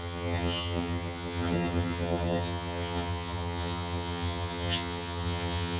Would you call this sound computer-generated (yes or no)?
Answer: yes